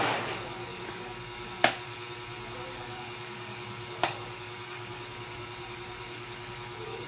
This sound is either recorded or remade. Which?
remade